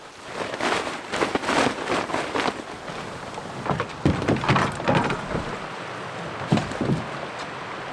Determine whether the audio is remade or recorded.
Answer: recorded